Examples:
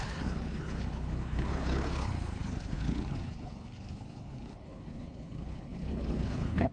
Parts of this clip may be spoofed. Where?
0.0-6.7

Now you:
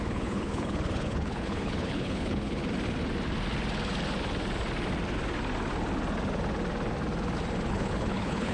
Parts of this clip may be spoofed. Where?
0.0-2.6; 7.7-8.5

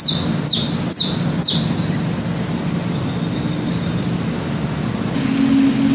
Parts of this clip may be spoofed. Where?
none

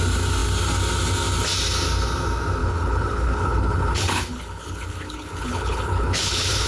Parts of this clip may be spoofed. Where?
2.6-6.7

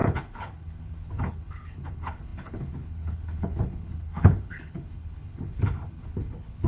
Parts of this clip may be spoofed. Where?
0.0-6.7

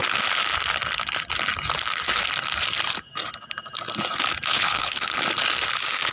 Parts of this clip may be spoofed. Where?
4.5-5.1